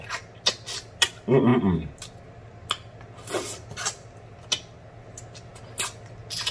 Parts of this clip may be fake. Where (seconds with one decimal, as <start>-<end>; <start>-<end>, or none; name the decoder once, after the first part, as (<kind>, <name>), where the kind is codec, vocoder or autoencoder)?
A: none